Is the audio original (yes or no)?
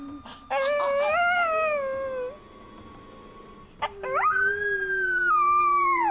yes